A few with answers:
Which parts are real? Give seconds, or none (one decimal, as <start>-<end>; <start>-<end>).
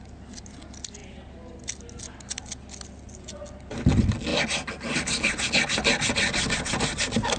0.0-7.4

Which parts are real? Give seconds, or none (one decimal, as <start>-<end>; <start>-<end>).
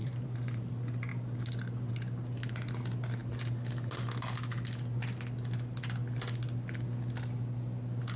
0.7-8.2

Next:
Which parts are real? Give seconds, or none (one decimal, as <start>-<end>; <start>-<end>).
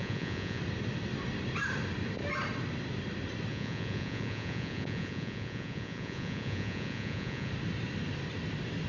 0.6-3.5; 7.5-8.9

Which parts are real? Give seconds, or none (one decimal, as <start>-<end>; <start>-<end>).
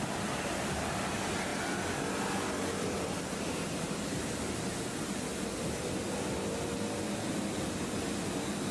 0.0-8.7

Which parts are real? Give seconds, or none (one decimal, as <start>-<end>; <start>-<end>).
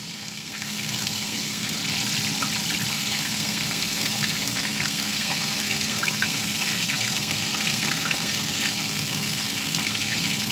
1.8-2.9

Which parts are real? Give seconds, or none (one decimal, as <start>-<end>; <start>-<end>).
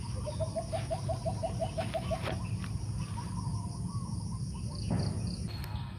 0.0-6.0